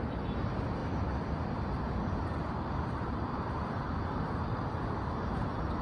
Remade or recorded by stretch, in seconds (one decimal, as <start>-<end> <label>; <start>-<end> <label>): 0.0-0.8 recorded; 0.8-3.9 remade; 3.9-5.8 recorded